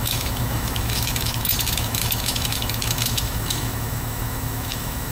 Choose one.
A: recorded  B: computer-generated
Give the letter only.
B